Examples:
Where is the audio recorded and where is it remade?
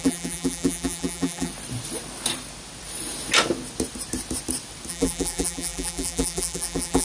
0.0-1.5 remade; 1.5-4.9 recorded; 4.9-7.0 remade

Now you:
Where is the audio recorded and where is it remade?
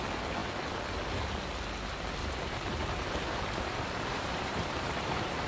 0.0-2.2 recorded; 2.2-5.5 remade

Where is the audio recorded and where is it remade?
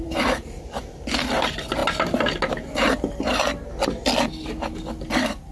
0.0-1.8 remade; 1.8-5.1 recorded; 5.1-5.5 remade